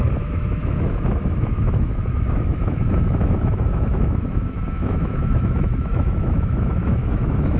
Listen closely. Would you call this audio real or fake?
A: fake